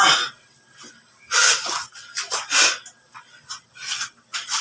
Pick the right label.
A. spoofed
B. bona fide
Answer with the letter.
A